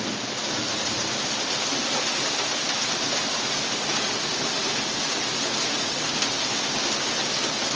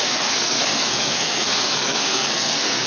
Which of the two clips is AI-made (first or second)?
second